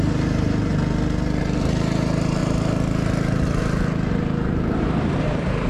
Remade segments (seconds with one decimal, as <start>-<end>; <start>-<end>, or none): 0.0-0.7; 1.4-2.4; 4.1-5.7